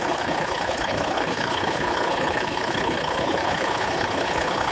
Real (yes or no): no